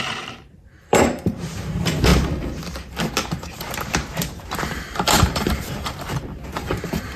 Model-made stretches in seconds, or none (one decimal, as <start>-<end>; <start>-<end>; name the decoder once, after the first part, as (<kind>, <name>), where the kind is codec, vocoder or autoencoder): 0.0-2.1 (vocoder, BigVGAN v2); 3.5-7.2